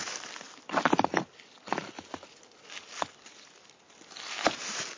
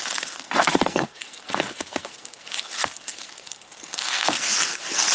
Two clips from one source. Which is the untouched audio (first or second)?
first